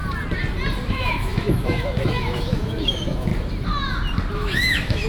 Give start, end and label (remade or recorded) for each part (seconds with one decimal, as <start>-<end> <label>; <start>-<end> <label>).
0.0-0.9 recorded; 0.9-3.3 remade; 3.3-4.3 recorded; 4.3-5.1 remade